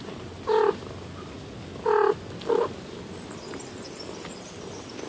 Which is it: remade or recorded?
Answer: recorded